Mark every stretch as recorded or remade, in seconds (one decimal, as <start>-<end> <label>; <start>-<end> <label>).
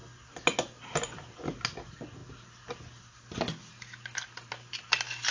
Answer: 0.0-5.3 recorded